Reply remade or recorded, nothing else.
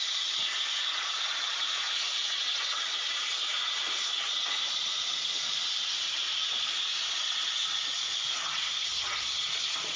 remade